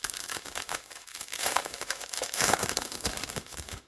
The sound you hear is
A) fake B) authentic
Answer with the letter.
A